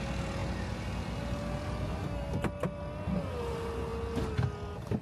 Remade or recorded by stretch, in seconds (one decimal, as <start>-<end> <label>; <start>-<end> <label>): 0.0-5.0 recorded